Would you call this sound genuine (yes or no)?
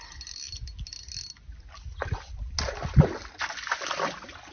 yes